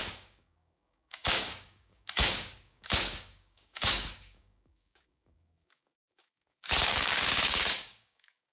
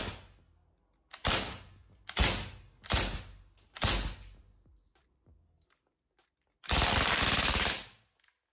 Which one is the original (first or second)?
second